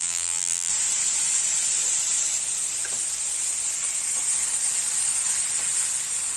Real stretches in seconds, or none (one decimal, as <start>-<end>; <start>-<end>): 0.7-6.4